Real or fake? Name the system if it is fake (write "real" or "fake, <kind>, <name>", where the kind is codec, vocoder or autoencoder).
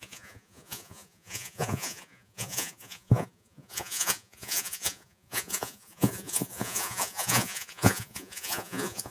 fake, vocoder, Vocos